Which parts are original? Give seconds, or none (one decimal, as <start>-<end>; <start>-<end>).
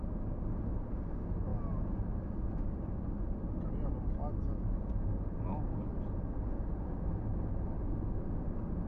0.0-8.9